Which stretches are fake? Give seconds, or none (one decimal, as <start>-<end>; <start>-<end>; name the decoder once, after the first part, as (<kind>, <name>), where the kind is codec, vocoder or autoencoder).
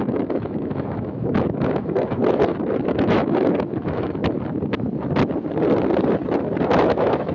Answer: 0.0-2.2 (autoencoder, DAC-VAE); 2.9-4.2; 6.6-7.3